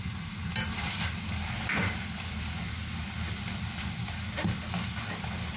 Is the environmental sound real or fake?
real